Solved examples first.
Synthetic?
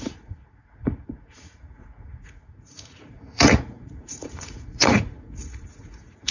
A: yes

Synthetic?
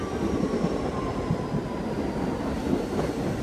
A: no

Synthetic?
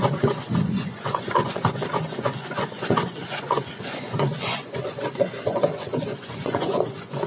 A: yes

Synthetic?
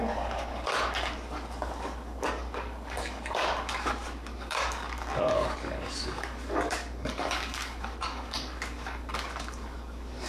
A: yes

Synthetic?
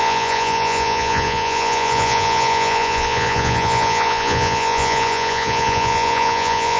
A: yes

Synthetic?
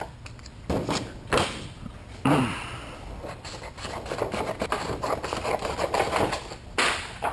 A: no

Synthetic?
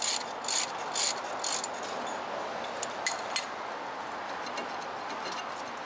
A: no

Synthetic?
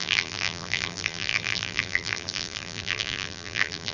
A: yes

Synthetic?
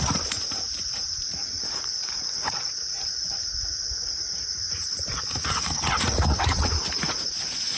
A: yes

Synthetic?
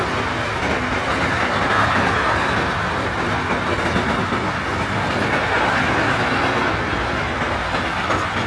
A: no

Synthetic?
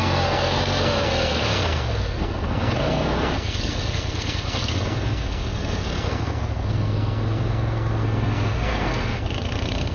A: yes